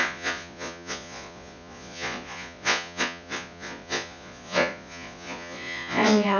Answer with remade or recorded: remade